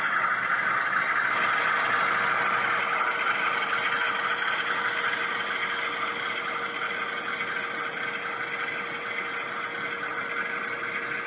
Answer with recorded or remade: recorded